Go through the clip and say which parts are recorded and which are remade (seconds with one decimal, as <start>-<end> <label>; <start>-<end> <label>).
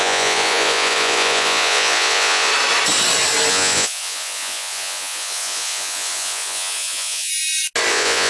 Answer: 0.0-2.5 remade; 2.5-3.5 recorded; 3.5-7.3 remade; 7.3-7.9 recorded; 7.9-8.3 remade